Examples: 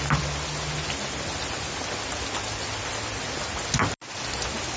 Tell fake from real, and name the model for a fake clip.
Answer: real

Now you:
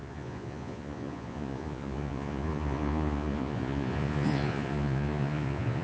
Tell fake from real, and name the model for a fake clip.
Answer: fake, vocoder, Vocos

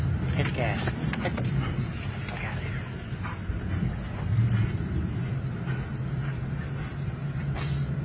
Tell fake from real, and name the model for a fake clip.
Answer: real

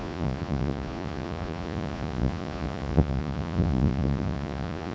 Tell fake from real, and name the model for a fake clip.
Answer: fake, vocoder, Vocos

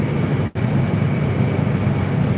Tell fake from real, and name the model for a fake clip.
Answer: real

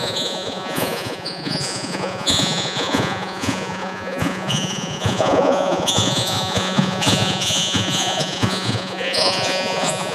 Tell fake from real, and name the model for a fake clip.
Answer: fake, vocoder, Vocos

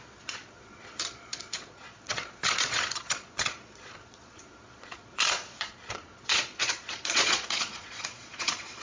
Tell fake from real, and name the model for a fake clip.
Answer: fake, vocoder, Vocos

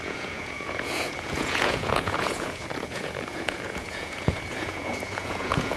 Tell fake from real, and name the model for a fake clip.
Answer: fake, vocoder, Vocos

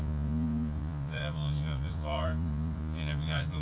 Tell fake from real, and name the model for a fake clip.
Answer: fake, vocoder, Vocos